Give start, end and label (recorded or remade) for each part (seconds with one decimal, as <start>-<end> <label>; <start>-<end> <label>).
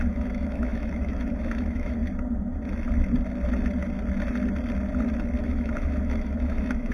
0.0-2.0 remade; 2.0-5.4 recorded; 5.4-6.9 remade